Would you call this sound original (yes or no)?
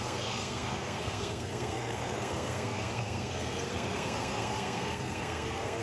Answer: no